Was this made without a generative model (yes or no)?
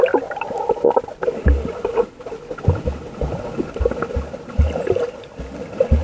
yes